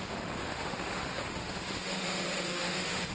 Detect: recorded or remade remade